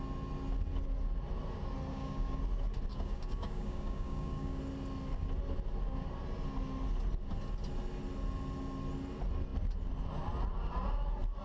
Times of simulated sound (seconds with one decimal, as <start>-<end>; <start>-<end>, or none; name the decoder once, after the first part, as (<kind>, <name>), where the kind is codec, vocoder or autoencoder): 1.9-2.4 (codec, DAC); 2.9-4.6